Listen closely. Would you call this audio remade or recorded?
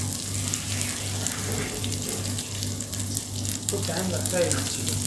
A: recorded